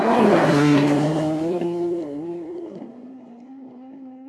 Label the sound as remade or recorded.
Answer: remade